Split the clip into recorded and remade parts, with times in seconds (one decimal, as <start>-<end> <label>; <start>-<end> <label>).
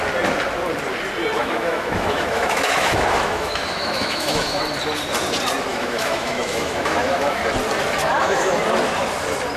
0.0-1.4 recorded; 1.4-4.6 remade; 4.6-5.7 recorded; 5.7-7.4 remade; 7.4-8.0 recorded; 8.0-8.6 remade; 8.6-9.6 recorded